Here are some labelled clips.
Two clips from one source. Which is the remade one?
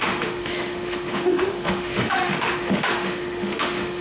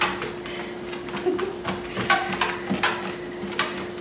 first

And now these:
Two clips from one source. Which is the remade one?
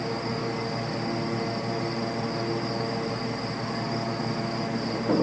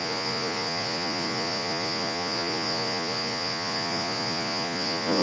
second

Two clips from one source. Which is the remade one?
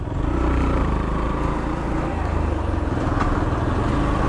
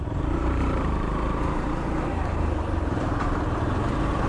second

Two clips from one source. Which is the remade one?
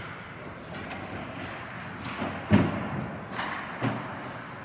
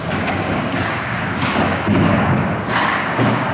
second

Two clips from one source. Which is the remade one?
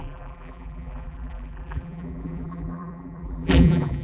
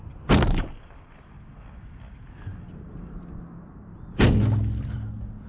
first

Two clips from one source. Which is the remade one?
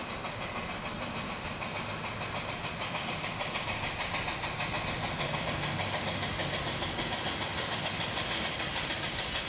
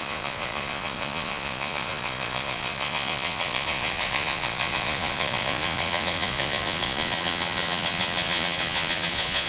second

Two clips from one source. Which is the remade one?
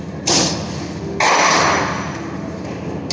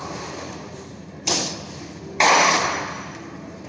second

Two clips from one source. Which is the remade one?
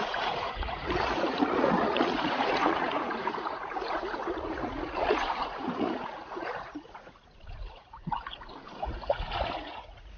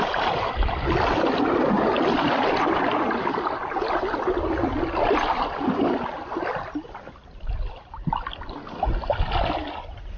first